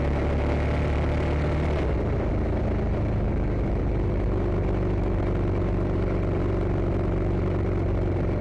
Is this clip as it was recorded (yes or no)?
yes